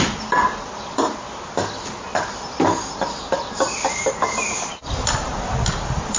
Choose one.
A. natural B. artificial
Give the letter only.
A